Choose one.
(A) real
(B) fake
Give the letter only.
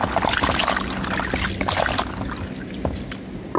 A